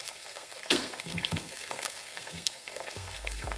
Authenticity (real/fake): fake